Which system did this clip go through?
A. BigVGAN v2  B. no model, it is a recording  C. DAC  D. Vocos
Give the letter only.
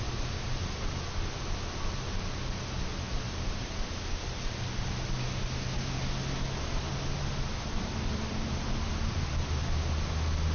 B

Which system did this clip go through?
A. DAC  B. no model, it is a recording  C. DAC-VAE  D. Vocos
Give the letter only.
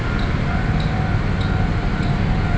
B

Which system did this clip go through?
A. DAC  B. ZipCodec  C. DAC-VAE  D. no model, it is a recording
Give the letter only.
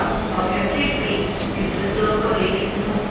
D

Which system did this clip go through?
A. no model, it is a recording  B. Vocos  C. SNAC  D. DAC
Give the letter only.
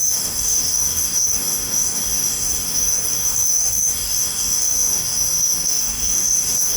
D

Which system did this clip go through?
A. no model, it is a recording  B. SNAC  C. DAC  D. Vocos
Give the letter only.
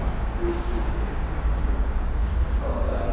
C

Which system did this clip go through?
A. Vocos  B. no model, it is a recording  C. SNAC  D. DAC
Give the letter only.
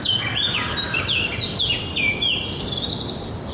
B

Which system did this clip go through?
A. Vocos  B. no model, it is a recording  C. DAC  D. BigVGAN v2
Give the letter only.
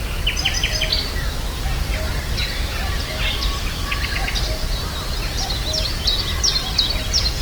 B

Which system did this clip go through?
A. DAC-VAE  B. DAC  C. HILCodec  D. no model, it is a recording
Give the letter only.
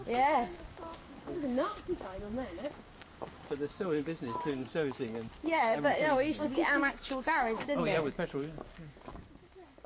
B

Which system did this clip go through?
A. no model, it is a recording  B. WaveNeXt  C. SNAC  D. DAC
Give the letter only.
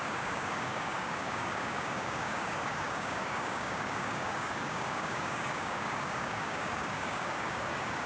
D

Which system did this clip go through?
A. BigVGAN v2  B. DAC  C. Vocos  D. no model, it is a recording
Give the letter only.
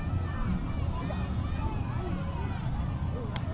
D